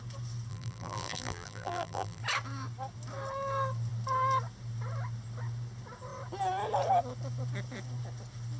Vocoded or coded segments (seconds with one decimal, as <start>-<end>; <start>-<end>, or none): 0.5-2.2